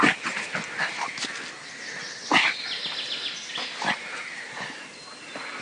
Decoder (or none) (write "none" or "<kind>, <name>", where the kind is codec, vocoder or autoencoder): none